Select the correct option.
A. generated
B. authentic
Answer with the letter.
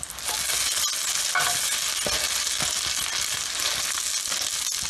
B